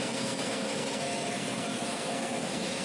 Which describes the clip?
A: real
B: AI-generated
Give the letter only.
B